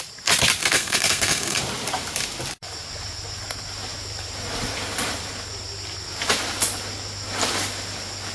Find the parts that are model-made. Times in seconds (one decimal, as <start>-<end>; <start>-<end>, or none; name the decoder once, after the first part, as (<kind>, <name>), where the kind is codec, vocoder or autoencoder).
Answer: 0.6-1.6 (codec, SNAC)